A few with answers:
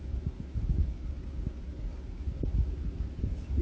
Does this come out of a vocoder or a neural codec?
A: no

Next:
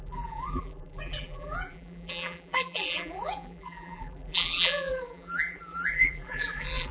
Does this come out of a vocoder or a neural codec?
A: yes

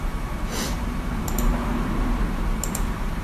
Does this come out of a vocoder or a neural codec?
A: no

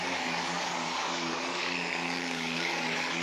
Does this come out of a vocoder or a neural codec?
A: yes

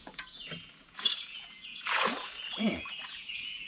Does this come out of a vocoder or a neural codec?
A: yes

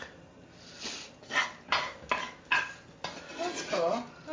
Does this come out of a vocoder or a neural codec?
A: no